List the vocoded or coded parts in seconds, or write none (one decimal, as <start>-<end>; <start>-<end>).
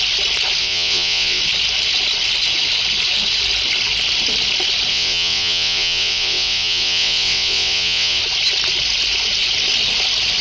0.6-1.4; 4.9-8.2